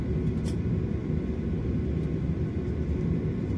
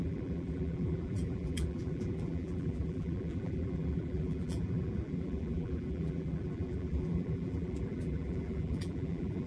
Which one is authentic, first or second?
first